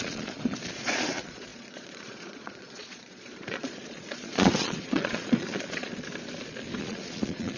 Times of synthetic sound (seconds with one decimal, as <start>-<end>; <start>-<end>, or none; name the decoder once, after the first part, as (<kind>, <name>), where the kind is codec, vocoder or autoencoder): 0.0-5.9 (vocoder, Vocos); 6.8-7.6